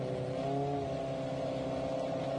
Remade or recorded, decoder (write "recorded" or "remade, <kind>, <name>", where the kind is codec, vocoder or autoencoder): recorded